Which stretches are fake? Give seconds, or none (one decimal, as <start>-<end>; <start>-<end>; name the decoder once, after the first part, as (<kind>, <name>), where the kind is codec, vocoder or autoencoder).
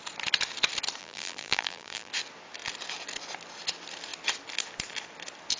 1.0-2.1 (vocoder, BigVGAN v2)